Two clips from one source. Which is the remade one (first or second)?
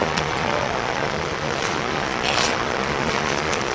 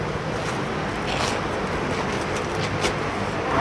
first